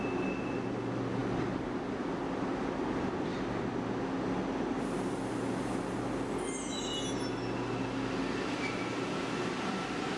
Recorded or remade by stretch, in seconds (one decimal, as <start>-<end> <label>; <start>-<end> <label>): 0.0-10.2 recorded